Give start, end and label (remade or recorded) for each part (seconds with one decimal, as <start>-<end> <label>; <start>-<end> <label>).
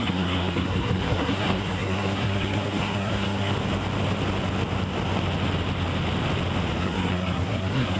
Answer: 0.0-3.5 remade; 3.5-6.8 recorded; 6.8-8.0 remade